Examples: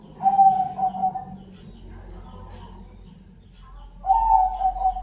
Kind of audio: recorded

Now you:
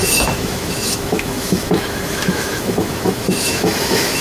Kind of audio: remade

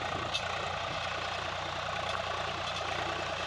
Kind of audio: recorded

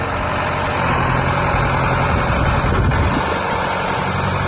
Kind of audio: recorded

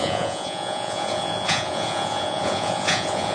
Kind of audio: remade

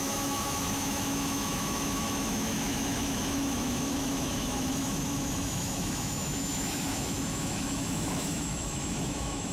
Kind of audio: remade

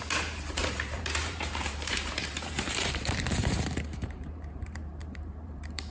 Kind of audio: remade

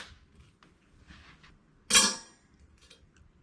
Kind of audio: recorded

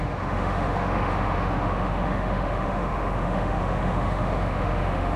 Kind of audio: remade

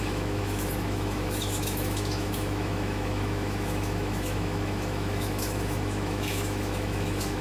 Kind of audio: remade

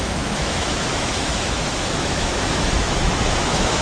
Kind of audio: remade